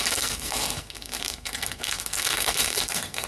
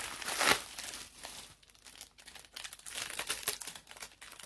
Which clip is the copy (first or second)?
first